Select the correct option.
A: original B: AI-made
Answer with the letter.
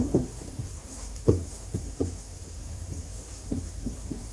B